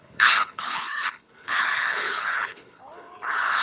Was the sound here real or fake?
fake